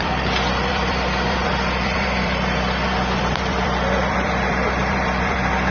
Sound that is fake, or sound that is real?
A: fake